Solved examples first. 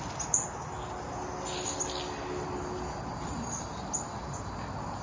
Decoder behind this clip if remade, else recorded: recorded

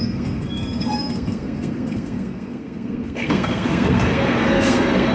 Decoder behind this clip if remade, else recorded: remade, codec, SNAC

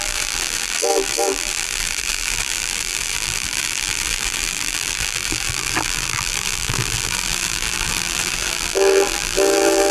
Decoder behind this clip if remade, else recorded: remade, vocoder, BigVGAN v2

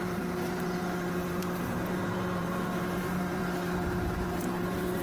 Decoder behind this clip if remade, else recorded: remade, vocoder, BigVGAN v2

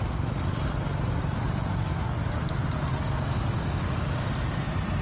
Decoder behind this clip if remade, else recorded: recorded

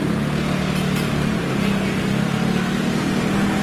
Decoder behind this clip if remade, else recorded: recorded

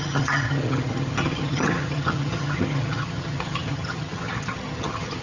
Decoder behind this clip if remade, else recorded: remade, vocoder, HiFi-GAN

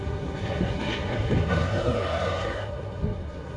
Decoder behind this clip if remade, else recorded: remade, codec, SNAC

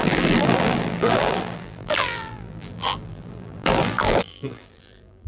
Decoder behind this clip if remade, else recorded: remade, vocoder, BigVGAN v2